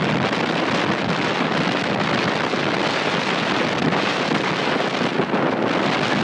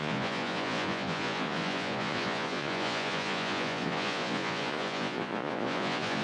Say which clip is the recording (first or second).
first